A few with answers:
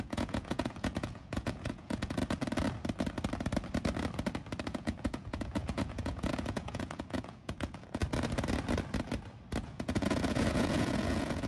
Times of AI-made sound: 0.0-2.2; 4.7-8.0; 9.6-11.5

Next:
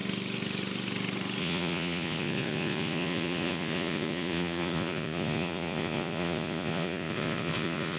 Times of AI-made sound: 1.4-8.0

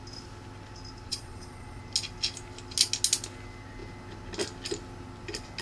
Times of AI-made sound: 1.1-1.8

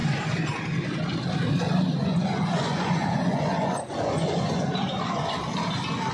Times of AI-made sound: 2.0-5.4

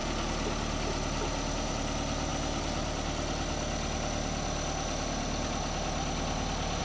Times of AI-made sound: none

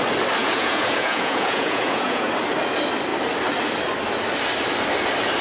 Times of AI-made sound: 0.4-2.3